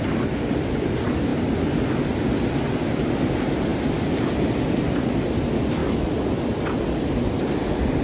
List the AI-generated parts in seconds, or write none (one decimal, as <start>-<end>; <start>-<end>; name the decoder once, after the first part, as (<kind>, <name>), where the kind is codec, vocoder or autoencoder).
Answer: none